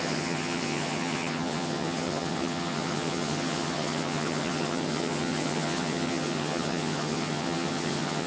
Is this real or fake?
fake